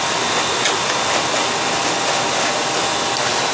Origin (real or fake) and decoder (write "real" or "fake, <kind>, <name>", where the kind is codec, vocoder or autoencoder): real